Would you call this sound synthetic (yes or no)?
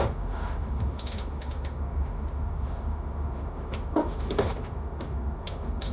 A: yes